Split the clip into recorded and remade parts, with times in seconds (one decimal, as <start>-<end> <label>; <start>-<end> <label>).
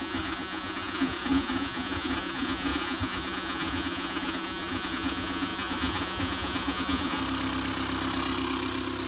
0.0-7.2 remade; 7.2-9.1 recorded